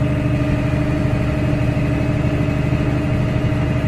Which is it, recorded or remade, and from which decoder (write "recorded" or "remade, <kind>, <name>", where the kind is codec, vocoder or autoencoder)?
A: recorded